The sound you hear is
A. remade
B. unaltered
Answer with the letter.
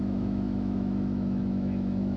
A